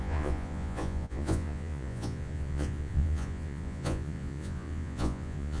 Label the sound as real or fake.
fake